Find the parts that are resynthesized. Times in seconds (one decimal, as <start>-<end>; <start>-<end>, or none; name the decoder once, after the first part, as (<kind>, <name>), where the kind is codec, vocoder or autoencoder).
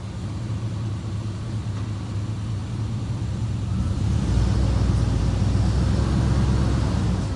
none